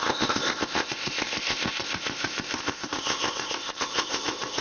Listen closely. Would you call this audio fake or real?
fake